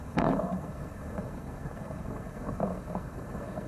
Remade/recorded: remade